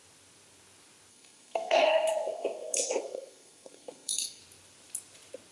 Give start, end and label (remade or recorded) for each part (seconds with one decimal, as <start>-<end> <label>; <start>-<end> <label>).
0.0-1.1 recorded; 1.1-4.4 remade; 4.4-5.5 recorded